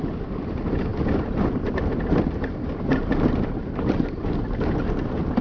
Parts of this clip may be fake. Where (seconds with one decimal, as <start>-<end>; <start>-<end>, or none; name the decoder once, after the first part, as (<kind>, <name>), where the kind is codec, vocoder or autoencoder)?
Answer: none